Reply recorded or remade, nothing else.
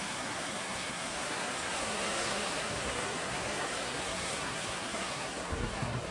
remade